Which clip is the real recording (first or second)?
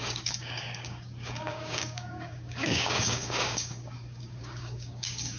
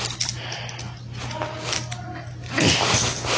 second